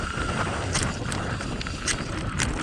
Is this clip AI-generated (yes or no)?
no